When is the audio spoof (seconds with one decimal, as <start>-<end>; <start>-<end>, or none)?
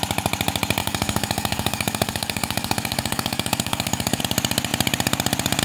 0.8-4.2